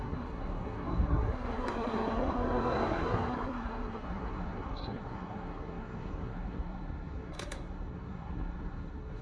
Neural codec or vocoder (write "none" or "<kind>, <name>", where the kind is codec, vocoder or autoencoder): codec, SNAC